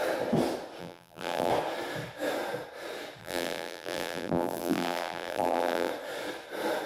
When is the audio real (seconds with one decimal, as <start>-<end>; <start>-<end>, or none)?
0.0-0.8; 1.5-3.2; 5.9-6.9